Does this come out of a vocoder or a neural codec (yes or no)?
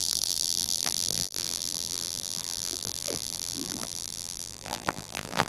yes